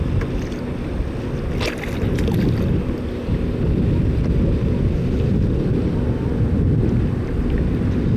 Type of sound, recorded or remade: recorded